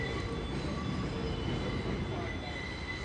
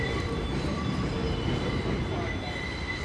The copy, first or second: second